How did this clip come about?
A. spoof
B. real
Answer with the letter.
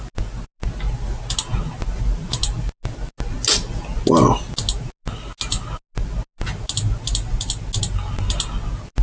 B